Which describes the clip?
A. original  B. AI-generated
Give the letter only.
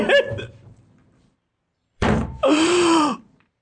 B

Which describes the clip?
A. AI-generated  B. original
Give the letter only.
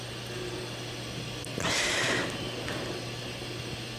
B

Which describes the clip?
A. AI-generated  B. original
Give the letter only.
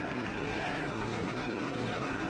A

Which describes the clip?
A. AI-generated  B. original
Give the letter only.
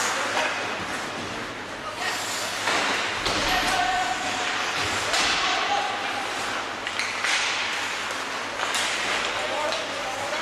B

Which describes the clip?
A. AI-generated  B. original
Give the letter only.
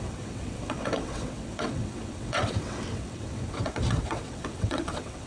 A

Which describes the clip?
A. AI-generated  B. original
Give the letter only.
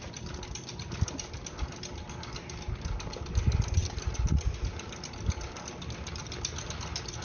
B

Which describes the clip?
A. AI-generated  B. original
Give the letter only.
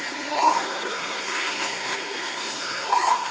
A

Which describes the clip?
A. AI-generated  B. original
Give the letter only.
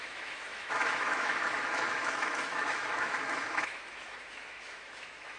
A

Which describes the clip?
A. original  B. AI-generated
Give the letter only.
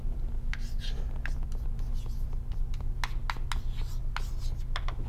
A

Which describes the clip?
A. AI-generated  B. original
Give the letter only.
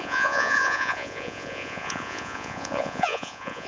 A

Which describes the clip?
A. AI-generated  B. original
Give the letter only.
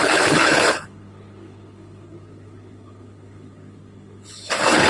A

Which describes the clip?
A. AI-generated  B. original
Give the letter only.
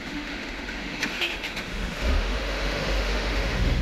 A